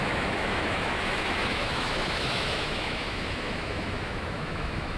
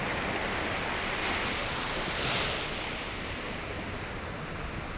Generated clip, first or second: first